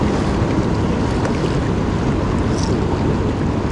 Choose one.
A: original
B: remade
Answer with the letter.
A